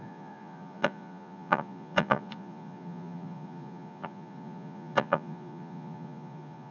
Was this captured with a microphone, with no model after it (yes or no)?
no